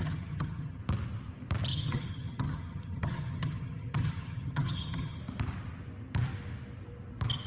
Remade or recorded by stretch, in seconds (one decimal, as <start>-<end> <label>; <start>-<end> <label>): 0.0-0.8 remade; 0.8-1.7 recorded; 1.7-5.2 remade; 5.2-7.5 recorded